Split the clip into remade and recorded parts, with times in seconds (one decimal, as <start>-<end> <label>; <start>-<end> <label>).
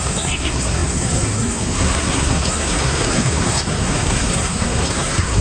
0.0-5.4 remade